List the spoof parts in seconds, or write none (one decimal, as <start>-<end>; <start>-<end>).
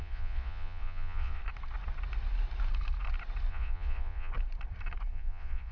0.0-1.4; 3.5-4.3; 5.1-5.7